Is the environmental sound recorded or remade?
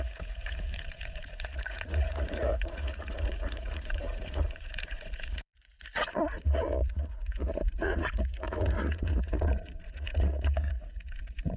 remade